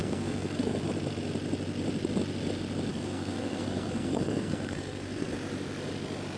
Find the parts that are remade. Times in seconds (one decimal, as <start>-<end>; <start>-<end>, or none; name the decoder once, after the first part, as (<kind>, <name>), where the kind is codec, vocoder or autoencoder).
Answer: 0.0-0.8 (codec, SNAC); 2.9-5.3